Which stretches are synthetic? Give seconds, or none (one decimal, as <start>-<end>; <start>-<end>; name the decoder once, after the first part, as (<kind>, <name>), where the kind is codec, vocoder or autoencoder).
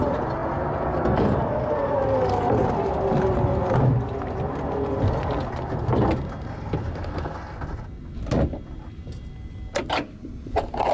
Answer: none